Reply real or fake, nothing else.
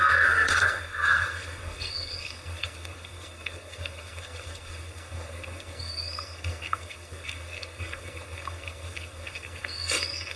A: fake